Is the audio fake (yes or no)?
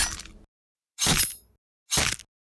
no